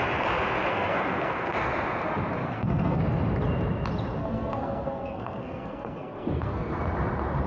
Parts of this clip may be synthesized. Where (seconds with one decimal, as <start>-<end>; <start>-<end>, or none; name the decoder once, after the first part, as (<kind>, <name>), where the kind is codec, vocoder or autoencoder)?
0.7-1.7 (codec, SNAC); 2.4-3.0; 4.2-6.8